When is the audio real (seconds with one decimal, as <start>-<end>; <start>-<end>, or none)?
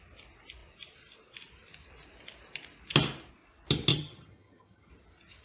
0.0-3.9; 4.9-5.4